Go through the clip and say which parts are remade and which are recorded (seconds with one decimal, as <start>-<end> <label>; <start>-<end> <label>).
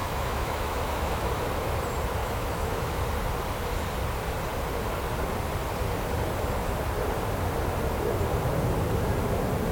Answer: 0.0-1.3 remade; 1.3-2.2 recorded; 2.2-3.0 remade; 3.0-9.7 recorded